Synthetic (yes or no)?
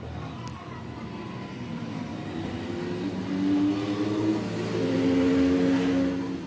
no